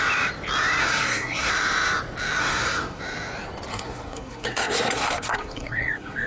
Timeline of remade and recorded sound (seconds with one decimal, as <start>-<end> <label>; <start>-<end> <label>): 0.0-0.8 recorded; 0.8-1.5 remade; 1.5-2.4 recorded; 2.4-3.0 remade; 3.0-3.7 recorded; 3.7-6.3 remade